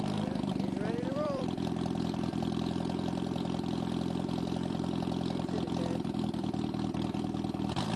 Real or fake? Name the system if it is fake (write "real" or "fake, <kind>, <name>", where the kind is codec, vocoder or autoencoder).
fake, vocoder, BigVGAN v2